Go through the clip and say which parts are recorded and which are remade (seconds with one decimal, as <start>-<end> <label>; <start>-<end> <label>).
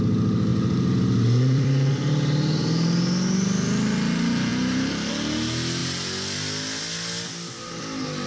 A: 0.0-0.5 recorded; 0.5-1.9 remade; 1.9-4.5 recorded; 4.5-5.1 remade; 5.1-8.3 recorded